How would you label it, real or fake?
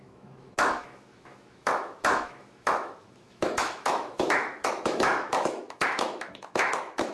fake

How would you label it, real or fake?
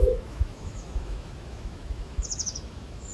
fake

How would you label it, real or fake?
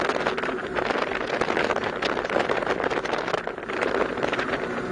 real